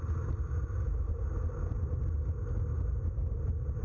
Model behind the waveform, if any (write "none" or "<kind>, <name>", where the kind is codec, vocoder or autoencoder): none